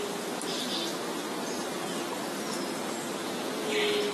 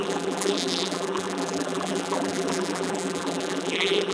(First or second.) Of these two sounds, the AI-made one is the second